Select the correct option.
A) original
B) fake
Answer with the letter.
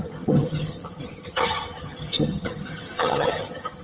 B